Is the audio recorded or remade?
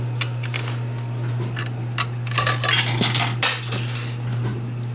recorded